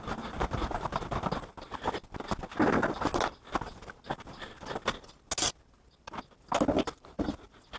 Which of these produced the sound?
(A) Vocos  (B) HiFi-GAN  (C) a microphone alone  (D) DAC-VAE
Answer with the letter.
C